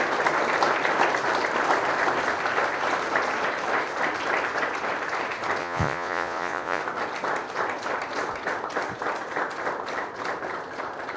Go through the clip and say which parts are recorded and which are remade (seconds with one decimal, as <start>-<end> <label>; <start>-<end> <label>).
0.0-5.6 recorded; 5.6-6.8 remade; 6.8-11.2 recorded